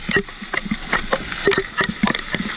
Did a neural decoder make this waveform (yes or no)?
no